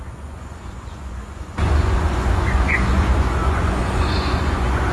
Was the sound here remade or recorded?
remade